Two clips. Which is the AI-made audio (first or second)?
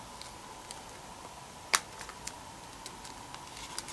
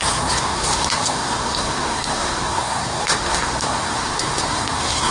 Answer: second